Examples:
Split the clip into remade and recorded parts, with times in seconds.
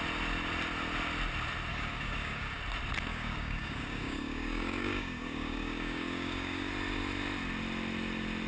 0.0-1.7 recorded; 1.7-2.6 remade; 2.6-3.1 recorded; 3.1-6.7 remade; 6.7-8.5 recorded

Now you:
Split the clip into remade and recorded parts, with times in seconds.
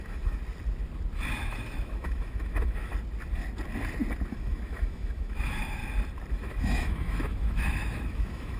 0.0-0.4 remade; 0.4-1.3 recorded; 1.3-2.9 remade; 2.9-4.3 recorded; 4.3-5.8 remade; 5.8-6.3 recorded; 6.3-8.6 remade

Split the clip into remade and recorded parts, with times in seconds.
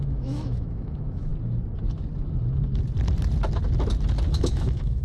0.0-1.3 remade; 1.3-4.3 recorded; 4.3-5.0 remade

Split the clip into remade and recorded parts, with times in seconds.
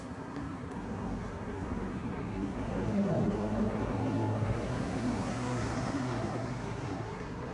0.0-7.5 remade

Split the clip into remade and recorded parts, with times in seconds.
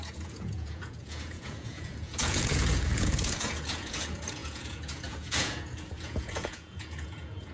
0.0-7.5 remade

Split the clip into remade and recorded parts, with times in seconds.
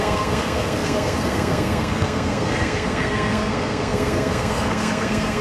0.0-5.4 remade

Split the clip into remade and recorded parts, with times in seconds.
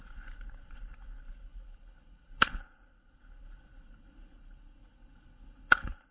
0.0-6.1 remade